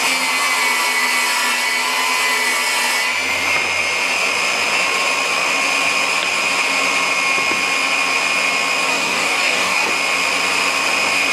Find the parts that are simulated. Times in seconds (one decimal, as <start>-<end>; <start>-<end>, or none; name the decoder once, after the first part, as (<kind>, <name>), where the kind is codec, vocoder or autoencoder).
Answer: 8.9-9.9 (codec, DAC)